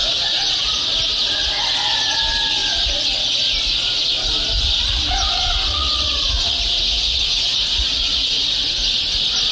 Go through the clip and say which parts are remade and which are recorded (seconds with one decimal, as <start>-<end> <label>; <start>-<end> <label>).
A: 0.0-0.9 remade; 0.9-5.7 recorded; 5.7-8.6 remade; 8.6-9.5 recorded